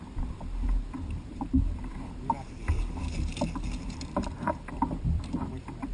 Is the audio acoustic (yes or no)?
no